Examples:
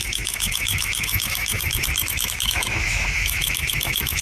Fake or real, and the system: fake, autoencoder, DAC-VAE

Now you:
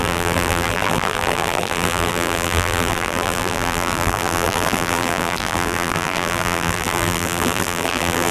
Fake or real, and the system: fake, vocoder, BigVGAN v2